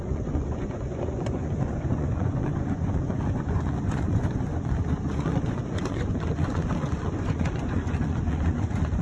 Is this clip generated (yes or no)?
yes